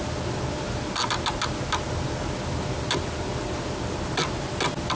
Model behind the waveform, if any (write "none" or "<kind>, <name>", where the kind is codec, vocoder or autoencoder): none